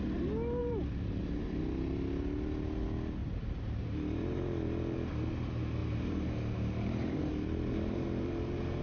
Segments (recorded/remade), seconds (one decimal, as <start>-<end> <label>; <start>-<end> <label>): 0.0-0.6 recorded; 0.6-1.2 remade; 1.2-3.2 recorded; 3.2-5.3 remade; 5.3-5.8 recorded; 5.8-8.8 remade